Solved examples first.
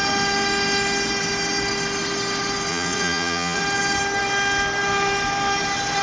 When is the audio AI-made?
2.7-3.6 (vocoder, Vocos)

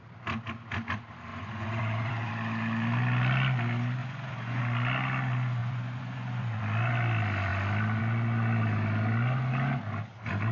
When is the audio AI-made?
1.3-2.3 (vocoder, Vocos); 4.0-4.6; 5.6-6.6